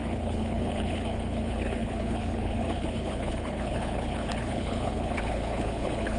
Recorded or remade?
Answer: remade